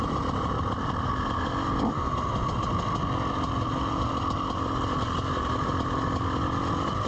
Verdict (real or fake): real